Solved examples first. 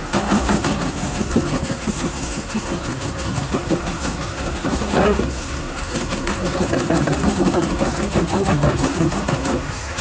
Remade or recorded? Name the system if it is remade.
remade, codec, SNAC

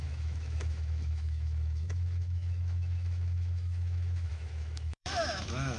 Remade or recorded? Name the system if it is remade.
remade, autoencoder, DAC-VAE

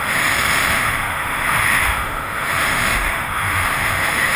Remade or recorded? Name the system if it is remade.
remade, autoencoder, DAC-VAE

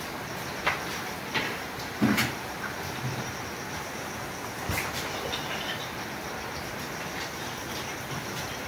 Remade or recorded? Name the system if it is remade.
recorded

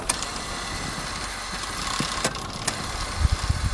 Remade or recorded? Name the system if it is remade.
recorded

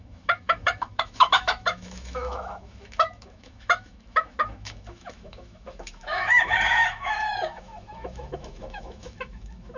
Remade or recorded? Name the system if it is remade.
remade, autoencoder, DAC-VAE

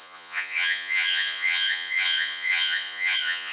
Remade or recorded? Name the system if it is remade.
remade, vocoder, Vocos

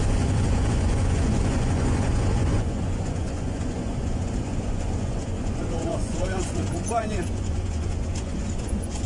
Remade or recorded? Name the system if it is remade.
remade, vocoder, Vocos